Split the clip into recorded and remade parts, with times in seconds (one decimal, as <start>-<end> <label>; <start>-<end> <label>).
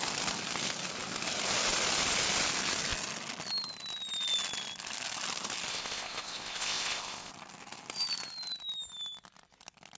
0.0-5.7 recorded; 5.7-7.3 remade; 7.3-10.0 recorded